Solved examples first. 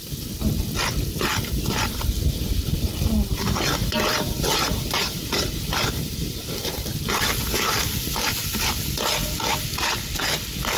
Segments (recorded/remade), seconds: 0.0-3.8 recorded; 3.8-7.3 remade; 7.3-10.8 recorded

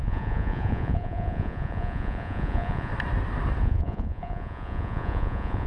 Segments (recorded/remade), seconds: 0.0-2.9 remade; 2.9-3.6 recorded; 3.6-5.7 remade

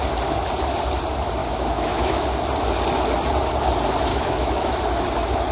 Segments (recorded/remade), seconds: 0.0-1.4 recorded; 1.4-2.3 remade; 2.3-4.1 recorded; 4.1-4.8 remade; 4.8-5.5 recorded

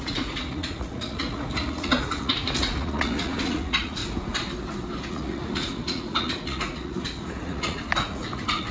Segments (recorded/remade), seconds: 0.0-4.0 remade; 4.0-5.1 recorded; 5.1-8.7 remade

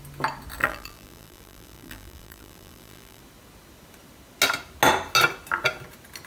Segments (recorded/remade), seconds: 0.0-0.6 recorded; 0.6-3.2 remade; 3.2-6.3 recorded

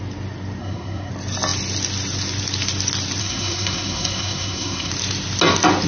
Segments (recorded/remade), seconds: 0.0-0.6 recorded; 0.6-1.1 remade; 1.1-3.2 recorded; 3.2-4.9 remade; 4.9-5.9 recorded